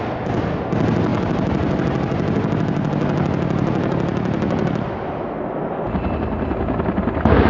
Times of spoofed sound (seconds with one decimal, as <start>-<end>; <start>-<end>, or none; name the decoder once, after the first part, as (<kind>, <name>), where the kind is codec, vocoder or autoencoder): none